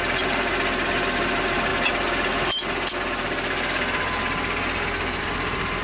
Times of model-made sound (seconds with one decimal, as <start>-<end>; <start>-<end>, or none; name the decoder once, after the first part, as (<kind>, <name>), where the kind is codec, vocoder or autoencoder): none